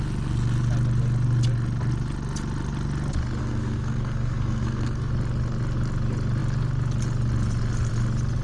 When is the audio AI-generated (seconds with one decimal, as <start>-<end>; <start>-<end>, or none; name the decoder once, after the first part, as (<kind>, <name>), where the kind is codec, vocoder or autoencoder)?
3.4-5.1 (codec, SNAC)